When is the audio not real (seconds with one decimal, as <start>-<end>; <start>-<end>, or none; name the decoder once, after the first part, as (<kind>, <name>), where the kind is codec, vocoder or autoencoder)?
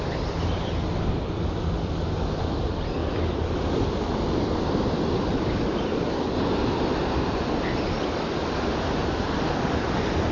none